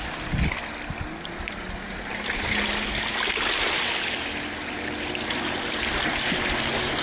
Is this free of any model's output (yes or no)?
yes